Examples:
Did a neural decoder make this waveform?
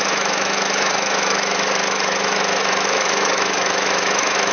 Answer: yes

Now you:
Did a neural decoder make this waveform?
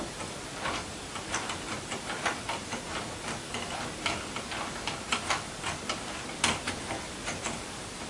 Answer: no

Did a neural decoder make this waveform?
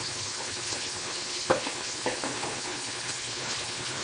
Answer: yes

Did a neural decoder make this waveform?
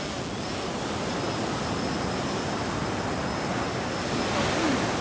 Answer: no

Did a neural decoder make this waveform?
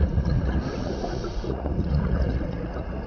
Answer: yes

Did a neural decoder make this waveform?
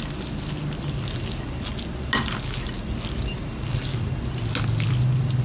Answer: no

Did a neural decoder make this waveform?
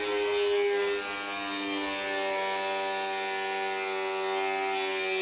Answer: no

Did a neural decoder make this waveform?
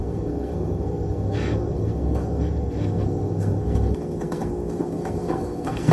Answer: yes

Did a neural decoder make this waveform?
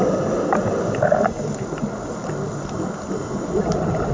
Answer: no